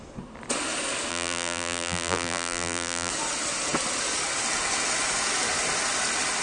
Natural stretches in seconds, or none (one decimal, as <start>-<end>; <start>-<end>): 0.0-1.1; 3.1-6.4